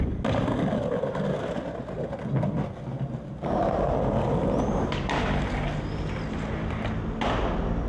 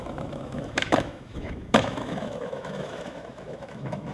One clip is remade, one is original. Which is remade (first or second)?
second